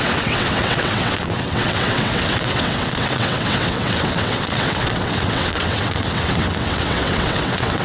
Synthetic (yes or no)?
yes